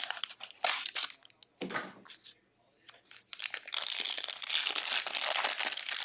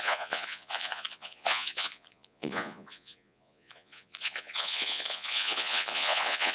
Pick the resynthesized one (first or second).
second